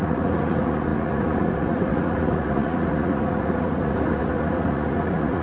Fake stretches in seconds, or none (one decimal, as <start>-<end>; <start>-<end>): 0.0-5.4